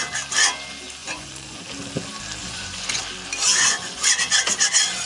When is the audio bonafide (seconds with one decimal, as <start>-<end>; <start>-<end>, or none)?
0.0-1.0; 1.6-2.4; 3.0-3.5; 4.1-5.1